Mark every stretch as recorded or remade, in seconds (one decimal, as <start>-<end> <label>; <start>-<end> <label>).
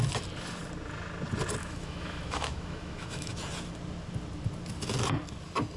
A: 0.0-1.6 recorded; 1.6-3.3 remade; 3.3-5.8 recorded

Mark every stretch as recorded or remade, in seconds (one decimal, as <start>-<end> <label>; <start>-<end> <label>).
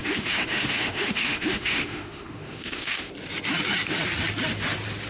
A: 0.0-3.1 remade; 3.1-5.1 recorded